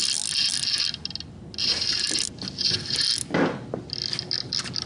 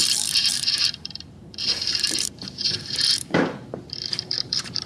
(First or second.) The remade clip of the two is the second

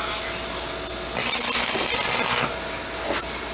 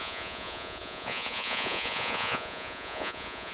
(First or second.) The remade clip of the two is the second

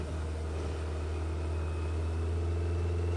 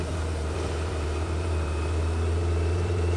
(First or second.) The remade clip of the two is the second